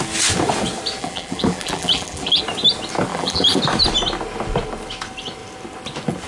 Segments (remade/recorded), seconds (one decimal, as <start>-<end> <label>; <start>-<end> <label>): 0.0-1.0 recorded; 1.0-2.4 remade; 2.4-3.1 recorded; 3.1-3.6 remade; 3.6-6.3 recorded